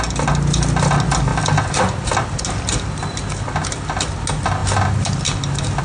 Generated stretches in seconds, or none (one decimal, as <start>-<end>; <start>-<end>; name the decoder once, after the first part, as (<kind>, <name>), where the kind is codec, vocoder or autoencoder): none